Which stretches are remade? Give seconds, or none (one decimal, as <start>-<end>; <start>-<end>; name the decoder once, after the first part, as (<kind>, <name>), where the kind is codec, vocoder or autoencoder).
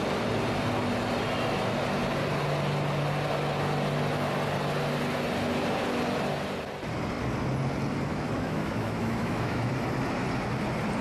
8.1-9.7 (autoencoder, DAC-VAE)